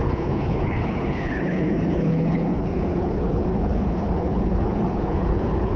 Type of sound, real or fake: fake